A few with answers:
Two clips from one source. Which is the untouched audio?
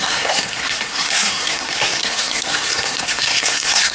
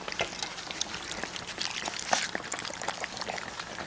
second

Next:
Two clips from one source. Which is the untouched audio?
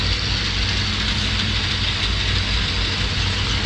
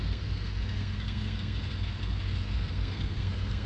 first